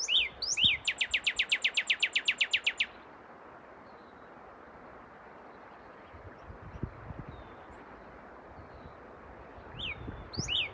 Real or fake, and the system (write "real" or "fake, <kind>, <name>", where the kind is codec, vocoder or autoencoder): real